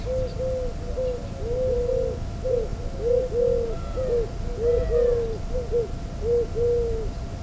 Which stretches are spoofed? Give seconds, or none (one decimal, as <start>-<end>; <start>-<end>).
none